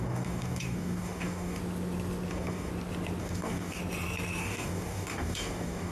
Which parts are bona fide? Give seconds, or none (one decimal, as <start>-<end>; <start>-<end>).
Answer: 1.6-2.3; 2.7-3.2; 3.8-4.4